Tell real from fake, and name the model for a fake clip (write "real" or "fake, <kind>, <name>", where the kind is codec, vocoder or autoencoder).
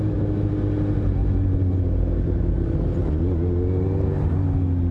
real